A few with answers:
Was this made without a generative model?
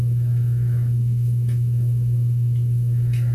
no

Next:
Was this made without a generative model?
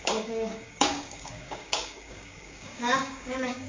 no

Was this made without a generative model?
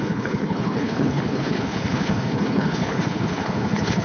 no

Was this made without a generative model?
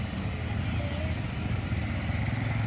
yes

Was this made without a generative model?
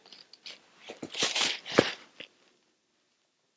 yes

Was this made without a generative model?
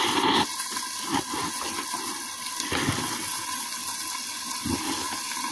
yes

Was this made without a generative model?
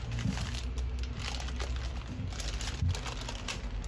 yes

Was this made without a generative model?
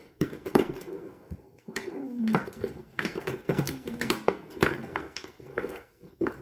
no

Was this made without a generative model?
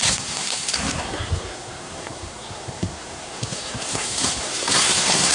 no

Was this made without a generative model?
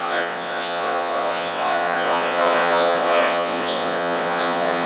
no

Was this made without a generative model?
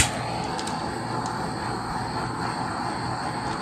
yes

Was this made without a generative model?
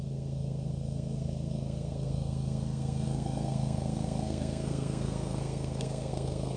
no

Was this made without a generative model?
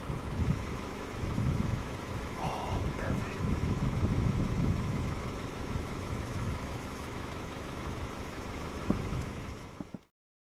no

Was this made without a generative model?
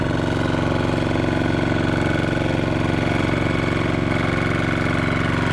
yes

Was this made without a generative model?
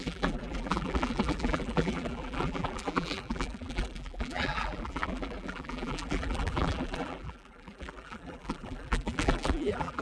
no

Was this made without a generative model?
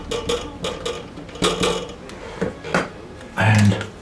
yes